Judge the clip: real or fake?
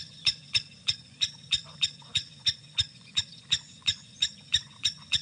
fake